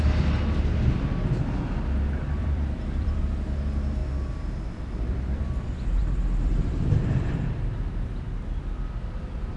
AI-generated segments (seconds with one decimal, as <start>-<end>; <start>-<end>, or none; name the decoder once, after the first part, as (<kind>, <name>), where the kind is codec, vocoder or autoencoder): 2.4-3.2 (vocoder, BigVGAN v2); 4.0-5.4; 6.0-8.1